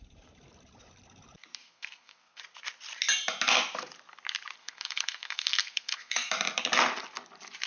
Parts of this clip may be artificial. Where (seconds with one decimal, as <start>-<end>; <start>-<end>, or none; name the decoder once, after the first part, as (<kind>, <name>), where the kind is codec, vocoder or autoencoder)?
1.6-2.4 (codec, SNAC); 4.6-6.3